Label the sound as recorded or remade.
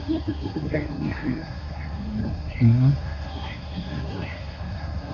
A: remade